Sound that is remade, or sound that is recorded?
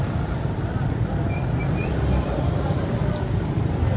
remade